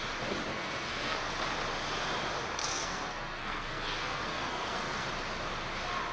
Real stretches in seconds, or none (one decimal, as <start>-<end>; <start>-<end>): 0.0-0.5; 1.3-2.6; 5.1-6.1